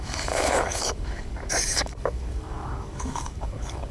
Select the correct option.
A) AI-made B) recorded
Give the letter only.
A